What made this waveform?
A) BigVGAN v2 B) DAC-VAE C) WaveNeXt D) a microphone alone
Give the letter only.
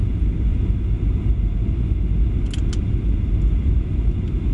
D